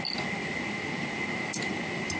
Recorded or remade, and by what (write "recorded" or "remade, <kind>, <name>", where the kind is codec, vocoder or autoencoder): recorded